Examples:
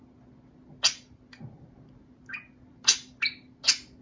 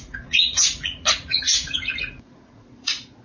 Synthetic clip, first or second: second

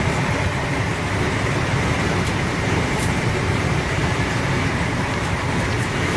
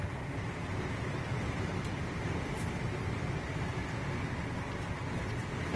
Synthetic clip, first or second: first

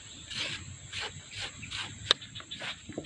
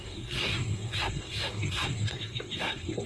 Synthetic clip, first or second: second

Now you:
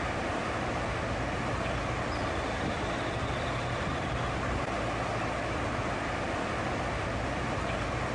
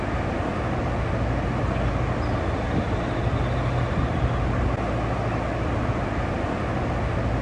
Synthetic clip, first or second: first